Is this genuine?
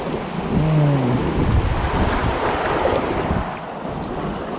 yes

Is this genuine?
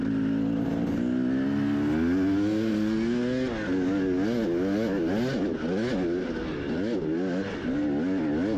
yes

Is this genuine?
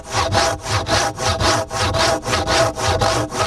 yes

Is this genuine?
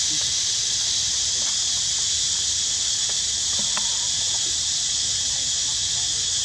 yes